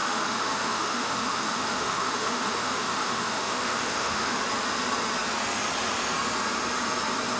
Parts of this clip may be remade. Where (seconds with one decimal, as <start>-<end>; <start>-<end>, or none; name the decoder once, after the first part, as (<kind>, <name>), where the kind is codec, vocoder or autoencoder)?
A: 0.0-4.4 (autoencoder, DAC-VAE)